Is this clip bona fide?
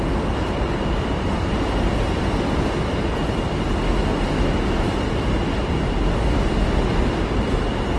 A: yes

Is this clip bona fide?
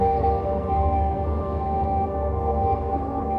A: no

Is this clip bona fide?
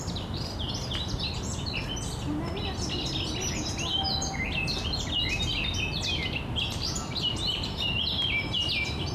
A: yes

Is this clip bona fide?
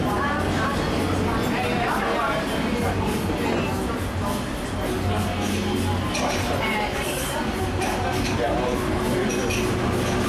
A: yes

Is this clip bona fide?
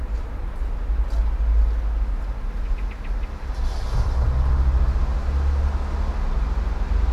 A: yes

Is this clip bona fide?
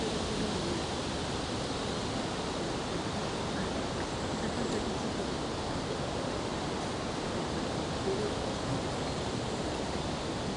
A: yes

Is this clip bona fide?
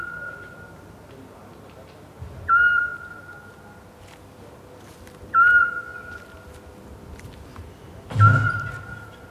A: yes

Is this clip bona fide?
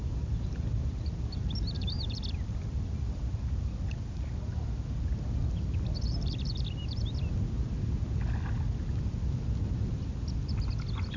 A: yes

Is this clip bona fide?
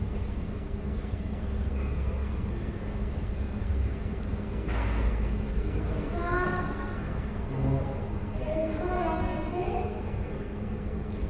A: no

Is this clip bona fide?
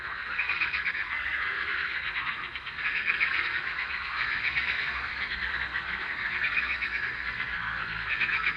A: no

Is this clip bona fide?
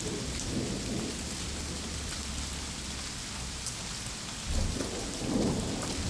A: yes